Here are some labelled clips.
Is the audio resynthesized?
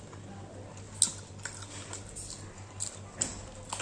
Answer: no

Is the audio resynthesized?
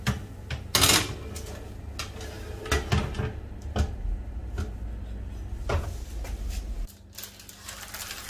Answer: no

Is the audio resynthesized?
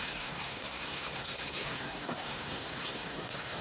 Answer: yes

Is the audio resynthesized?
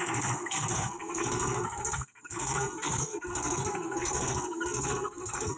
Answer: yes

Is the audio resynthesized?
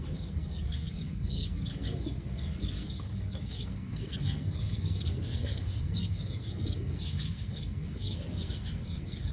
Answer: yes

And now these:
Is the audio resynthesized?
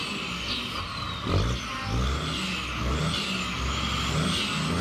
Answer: no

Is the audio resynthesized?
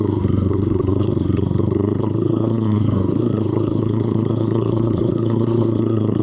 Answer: yes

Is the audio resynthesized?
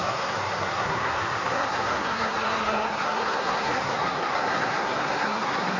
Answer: yes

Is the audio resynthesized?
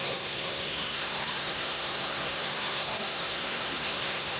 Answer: yes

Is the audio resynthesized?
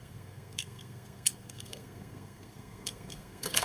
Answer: yes